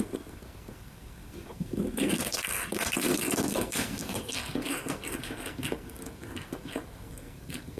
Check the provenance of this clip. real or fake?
fake